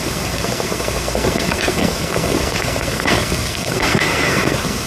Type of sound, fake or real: fake